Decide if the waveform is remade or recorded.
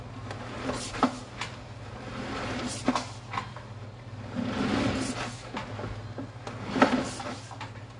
recorded